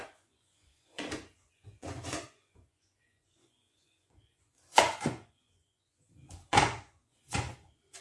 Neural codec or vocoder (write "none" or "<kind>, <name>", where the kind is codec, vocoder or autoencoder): vocoder, Vocos